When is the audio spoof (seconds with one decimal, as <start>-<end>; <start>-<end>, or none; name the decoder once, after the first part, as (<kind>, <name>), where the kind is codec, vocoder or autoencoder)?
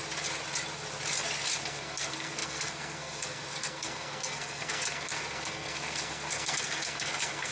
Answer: 1.6-7.5 (codec, SNAC)